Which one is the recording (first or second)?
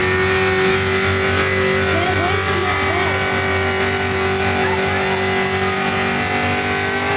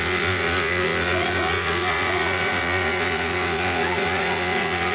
first